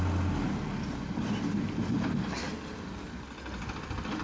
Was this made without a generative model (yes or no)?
yes